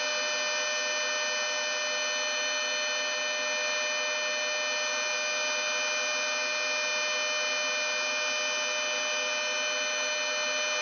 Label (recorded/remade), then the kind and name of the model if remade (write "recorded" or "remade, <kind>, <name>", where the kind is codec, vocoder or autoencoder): recorded